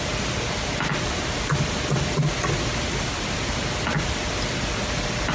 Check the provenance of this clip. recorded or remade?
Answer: recorded